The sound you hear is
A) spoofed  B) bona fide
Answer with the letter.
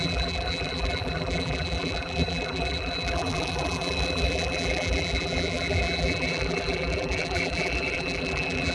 A